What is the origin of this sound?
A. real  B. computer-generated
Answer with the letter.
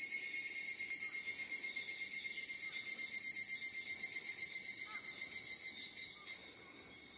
A